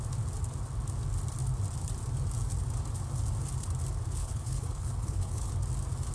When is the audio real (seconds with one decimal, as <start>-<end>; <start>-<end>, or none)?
0.0-4.2; 5.5-6.1